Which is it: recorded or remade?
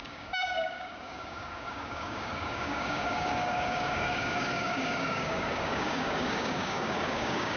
remade